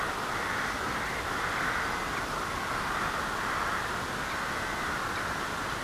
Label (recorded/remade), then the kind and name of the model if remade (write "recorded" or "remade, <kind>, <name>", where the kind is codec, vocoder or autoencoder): recorded